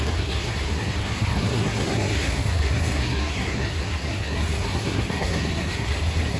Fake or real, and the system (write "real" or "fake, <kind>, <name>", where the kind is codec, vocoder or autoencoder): fake, codec, SNAC